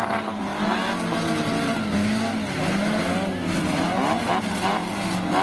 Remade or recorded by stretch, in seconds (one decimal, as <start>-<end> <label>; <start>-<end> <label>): 0.0-5.4 recorded